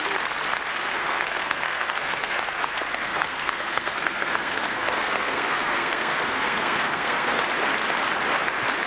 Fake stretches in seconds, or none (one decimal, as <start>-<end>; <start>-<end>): 0.7-2.4; 2.9-7.4